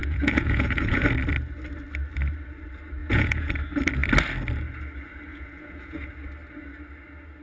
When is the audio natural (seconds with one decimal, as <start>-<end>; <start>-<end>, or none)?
1.0-3.0; 3.5-5.3; 6.1-7.4